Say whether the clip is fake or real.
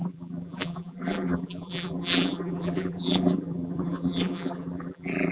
fake